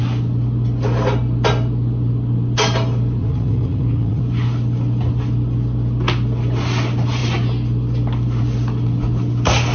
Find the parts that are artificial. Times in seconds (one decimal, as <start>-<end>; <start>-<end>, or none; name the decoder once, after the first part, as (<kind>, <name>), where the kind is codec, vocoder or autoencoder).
3.2-4.2 (vocoder, Vocos)